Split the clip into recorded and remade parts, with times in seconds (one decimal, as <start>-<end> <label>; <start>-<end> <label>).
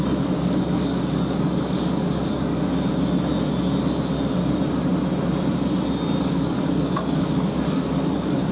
0.0-2.5 remade; 2.5-6.2 recorded; 6.2-8.5 remade